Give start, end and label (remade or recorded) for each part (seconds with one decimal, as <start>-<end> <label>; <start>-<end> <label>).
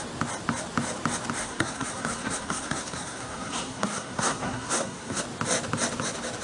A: 0.0-1.4 recorded; 1.4-5.2 remade; 5.2-6.4 recorded